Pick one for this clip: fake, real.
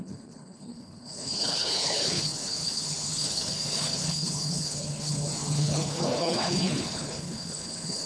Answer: fake